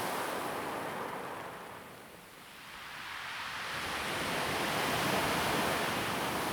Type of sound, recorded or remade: recorded